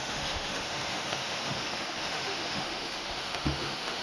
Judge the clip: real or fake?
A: fake